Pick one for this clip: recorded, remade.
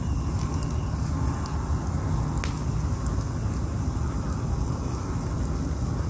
recorded